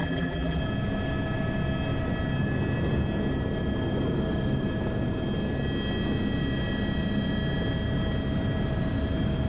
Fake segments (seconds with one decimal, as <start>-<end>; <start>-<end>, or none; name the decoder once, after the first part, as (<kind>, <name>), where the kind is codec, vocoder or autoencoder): 0.0-0.6 (vocoder, BigVGAN v2)